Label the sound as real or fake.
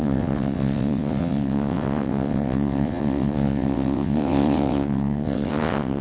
fake